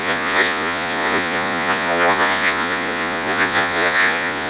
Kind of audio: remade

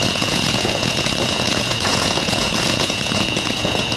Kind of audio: remade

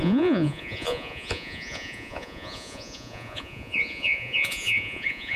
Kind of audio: remade